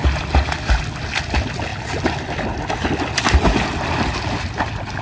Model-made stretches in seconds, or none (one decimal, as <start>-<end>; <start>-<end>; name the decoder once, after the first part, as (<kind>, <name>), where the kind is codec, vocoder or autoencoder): 0.0-0.8 (vocoder, BigVGAN v2)